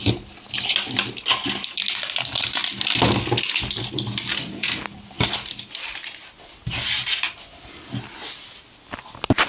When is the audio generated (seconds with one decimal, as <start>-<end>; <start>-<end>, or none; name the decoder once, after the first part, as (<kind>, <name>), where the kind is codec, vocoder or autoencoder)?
none